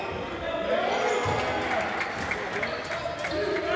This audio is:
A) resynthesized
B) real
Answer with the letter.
B